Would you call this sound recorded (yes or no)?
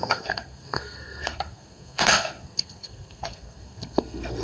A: no